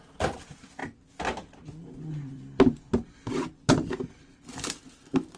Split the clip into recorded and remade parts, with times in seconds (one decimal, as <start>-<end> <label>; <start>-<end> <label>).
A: 0.0-5.4 recorded